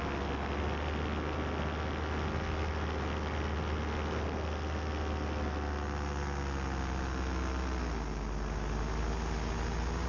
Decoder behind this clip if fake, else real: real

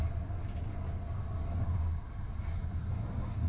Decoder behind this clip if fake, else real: real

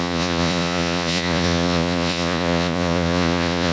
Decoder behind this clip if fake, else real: fake, vocoder, Vocos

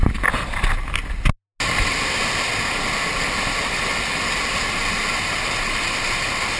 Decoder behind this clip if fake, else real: real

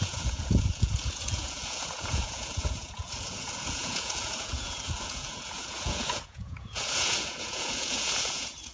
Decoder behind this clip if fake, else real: fake, vocoder, Vocos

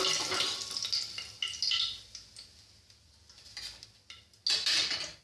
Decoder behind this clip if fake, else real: real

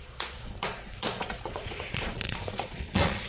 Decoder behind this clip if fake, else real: fake, vocoder, Vocos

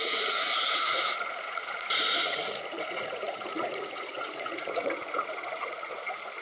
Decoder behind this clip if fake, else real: fake, vocoder, Vocos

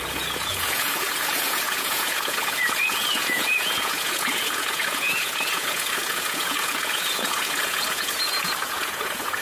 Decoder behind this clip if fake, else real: fake, vocoder, Vocos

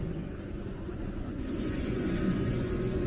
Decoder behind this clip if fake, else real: fake, vocoder, Vocos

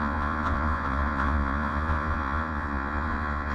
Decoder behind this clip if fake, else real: fake, vocoder, Vocos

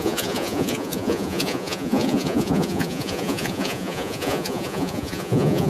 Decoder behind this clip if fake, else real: fake, vocoder, Vocos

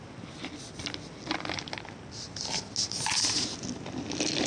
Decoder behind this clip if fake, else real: real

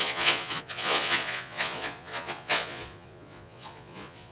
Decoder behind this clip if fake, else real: fake, vocoder, Vocos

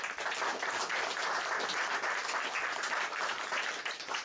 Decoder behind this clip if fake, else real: real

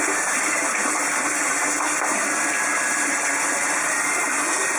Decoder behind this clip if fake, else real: real